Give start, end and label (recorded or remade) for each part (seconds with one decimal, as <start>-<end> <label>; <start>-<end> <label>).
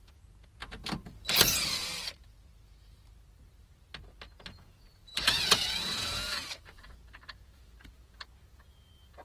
0.0-0.6 remade; 0.6-1.4 recorded; 1.4-1.9 remade; 1.9-4.5 recorded; 4.5-9.2 remade